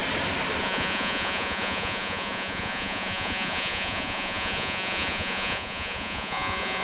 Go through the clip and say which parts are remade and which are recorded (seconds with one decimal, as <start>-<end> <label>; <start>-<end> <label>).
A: 0.0-0.6 recorded; 0.6-6.8 remade